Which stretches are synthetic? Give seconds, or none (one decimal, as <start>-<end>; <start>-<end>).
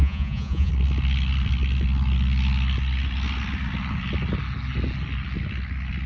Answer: 0.0-0.7